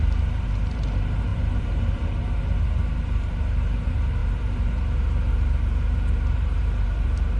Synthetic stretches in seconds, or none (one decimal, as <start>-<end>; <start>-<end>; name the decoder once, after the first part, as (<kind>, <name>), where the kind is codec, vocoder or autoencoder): 0.0-7.4 (vocoder, BigVGAN v2)